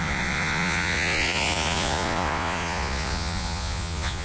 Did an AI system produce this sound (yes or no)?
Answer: yes